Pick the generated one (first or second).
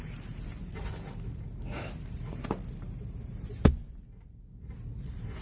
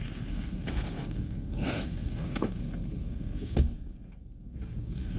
second